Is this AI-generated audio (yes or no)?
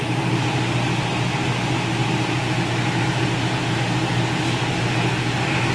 no